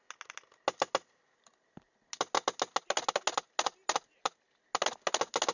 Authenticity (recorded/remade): recorded